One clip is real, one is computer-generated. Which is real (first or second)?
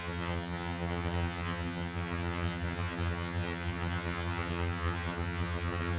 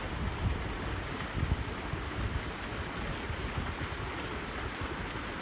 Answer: second